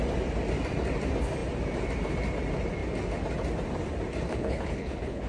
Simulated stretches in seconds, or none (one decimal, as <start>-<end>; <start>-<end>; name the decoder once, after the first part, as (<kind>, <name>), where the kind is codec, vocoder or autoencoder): 4.3-5.3 (codec, HILCodec)